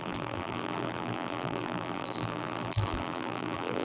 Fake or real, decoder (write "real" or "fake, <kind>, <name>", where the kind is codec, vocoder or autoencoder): fake, vocoder, BigVGAN v2